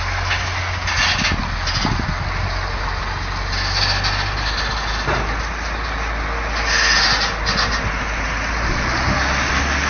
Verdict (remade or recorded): recorded